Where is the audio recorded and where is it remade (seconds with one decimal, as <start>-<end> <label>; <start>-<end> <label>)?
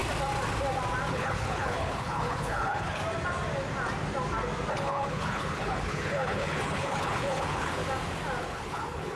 0.0-1.1 recorded; 1.1-3.0 remade; 3.0-4.7 recorded; 4.7-7.8 remade; 7.8-8.4 recorded; 8.4-9.2 remade